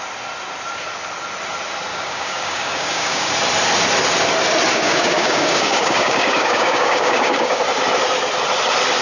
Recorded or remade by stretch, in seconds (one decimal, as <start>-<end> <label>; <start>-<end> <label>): 0.0-1.9 recorded; 1.9-3.3 remade; 3.3-4.7 recorded; 4.7-7.6 remade; 7.6-9.0 recorded